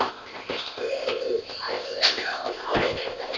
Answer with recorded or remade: remade